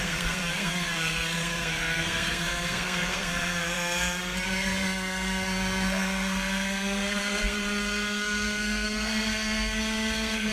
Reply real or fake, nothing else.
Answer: fake